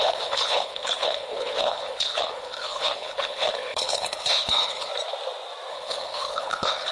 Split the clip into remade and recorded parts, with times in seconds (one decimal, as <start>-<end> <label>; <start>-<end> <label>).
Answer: 0.0-4.9 remade; 4.9-5.7 recorded; 5.7-6.9 remade